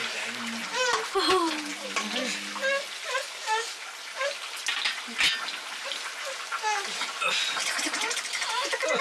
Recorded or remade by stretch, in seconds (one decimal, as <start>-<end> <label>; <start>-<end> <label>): 0.0-9.0 recorded